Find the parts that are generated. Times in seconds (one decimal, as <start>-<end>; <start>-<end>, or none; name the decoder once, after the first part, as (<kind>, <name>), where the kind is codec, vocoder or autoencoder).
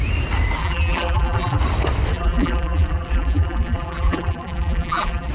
0.6-1.6 (vocoder, BigVGAN v2); 2.1-5.3